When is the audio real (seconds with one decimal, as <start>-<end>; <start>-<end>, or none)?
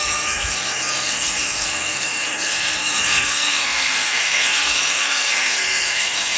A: none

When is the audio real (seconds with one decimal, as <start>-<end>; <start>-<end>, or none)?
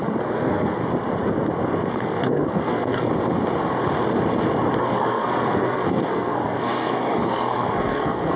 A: 0.8-1.9; 3.1-4.8